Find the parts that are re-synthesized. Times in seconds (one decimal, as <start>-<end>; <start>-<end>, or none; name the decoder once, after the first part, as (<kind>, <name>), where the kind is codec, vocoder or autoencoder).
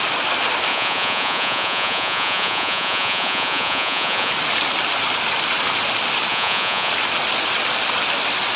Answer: 0.7-4.3 (vocoder, Vocos); 6.3-6.9